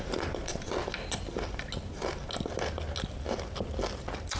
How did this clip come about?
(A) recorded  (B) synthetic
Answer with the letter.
A